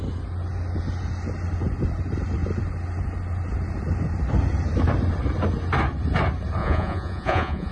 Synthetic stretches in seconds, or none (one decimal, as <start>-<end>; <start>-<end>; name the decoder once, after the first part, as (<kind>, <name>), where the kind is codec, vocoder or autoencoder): 6.6-7.7 (vocoder, Vocos)